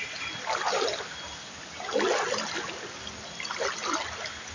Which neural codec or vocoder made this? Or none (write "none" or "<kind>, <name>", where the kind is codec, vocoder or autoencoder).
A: none